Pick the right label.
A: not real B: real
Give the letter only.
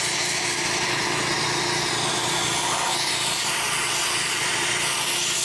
B